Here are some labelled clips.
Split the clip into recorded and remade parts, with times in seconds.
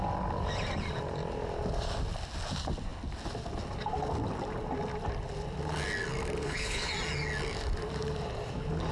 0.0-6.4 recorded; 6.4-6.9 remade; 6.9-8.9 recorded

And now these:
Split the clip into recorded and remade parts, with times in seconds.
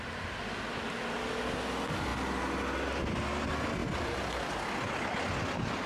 0.0-3.8 recorded; 3.8-4.5 remade; 4.5-5.9 recorded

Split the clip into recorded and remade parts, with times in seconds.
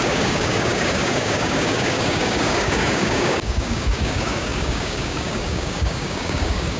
0.0-6.8 remade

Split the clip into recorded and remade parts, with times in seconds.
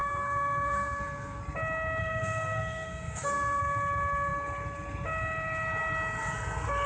0.0-1.4 remade; 1.4-2.0 recorded; 2.0-3.6 remade; 3.6-6.9 recorded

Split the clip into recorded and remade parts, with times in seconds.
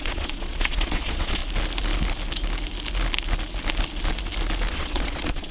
0.0-1.4 remade; 1.4-4.7 recorded; 4.7-5.5 remade